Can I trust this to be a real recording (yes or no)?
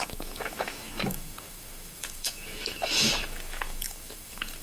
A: no